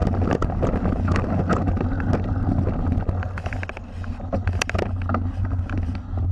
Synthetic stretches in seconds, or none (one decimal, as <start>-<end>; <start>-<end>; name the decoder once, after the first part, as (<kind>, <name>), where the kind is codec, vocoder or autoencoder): none